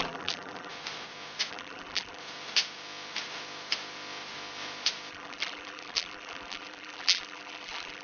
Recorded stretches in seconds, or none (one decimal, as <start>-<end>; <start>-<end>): 0.7-1.5; 2.2-5.1